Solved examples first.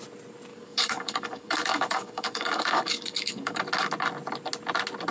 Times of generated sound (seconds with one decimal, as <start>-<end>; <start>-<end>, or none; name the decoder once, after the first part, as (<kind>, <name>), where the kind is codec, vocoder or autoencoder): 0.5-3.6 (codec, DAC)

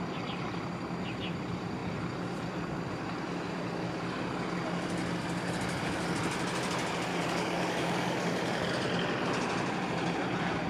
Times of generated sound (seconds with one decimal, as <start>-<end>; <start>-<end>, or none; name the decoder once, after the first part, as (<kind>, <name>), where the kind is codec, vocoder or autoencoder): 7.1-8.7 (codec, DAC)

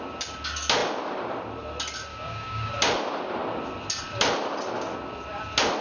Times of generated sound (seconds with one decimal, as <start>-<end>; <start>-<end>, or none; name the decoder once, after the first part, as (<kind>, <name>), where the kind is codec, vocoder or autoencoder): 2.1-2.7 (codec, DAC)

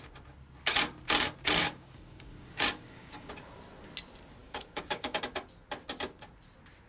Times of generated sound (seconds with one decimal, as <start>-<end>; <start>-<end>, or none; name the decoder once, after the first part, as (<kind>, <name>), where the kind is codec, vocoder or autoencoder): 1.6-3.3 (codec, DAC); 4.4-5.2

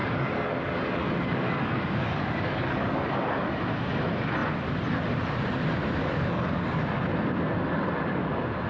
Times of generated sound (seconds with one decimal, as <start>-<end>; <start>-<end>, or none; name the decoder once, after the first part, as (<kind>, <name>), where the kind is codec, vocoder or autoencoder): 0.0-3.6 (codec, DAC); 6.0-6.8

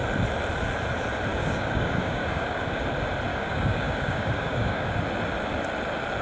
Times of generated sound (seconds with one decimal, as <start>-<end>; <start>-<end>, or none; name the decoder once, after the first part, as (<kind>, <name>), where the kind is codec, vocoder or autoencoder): 1.3-2.8 (codec, DAC); 3.3-5.0

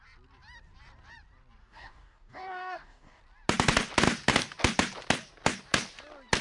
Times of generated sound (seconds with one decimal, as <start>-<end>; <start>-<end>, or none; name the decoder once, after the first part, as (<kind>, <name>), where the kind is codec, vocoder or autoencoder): 1.6-3.2 (codec, DAC)

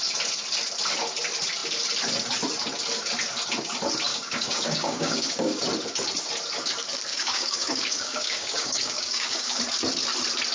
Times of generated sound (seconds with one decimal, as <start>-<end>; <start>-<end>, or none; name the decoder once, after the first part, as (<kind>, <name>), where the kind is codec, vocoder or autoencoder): 4.1-5.6 (codec, DAC); 7.1-9.6